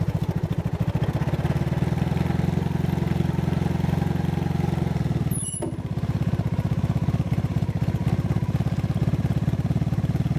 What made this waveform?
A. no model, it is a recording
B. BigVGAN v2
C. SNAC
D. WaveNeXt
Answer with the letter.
A